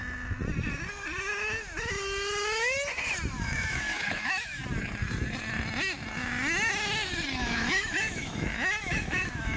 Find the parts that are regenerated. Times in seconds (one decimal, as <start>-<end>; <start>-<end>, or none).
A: 3.3-4.6; 7.4-9.6